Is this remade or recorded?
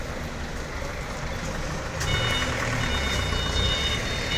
recorded